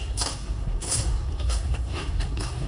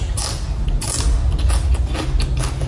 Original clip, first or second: second